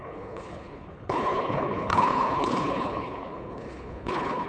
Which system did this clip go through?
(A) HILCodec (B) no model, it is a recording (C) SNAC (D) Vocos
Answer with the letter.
A